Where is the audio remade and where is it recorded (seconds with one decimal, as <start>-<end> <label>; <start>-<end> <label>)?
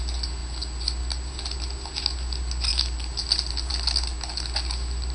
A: 0.0-5.1 recorded